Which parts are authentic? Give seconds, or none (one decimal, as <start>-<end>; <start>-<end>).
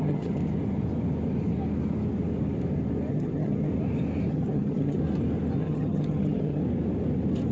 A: 0.4-3.1; 3.7-4.3; 5.0-5.6; 6.6-7.5